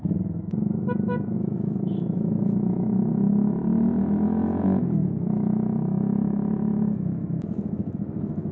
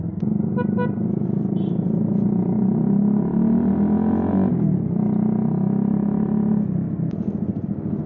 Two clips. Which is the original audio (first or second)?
second